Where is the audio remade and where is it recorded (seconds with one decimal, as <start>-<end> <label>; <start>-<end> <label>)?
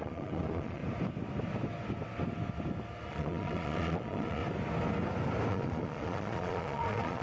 0.0-0.8 remade; 0.8-3.1 recorded; 3.1-4.4 remade; 4.4-5.5 recorded; 5.5-7.2 remade